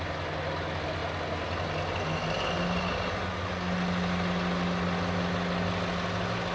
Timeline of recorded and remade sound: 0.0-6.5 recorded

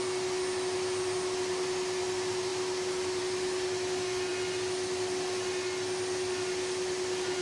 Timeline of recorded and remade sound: 0.0-7.4 recorded

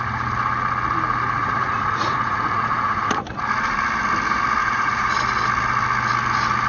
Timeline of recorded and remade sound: 0.0-1.4 recorded; 1.4-3.4 remade; 3.4-4.6 recorded; 4.6-5.1 remade; 5.1-6.7 recorded